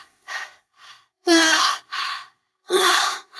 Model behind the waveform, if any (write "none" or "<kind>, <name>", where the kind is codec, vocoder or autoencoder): codec, SNAC